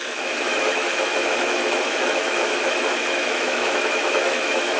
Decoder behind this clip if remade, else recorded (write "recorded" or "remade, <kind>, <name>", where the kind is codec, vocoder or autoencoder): remade, autoencoder, DAC-VAE